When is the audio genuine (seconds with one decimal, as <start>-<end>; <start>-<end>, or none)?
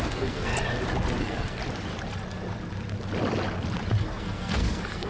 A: 0.5-1.2; 1.6-4.0